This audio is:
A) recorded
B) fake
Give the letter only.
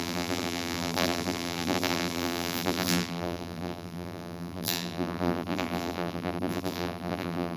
B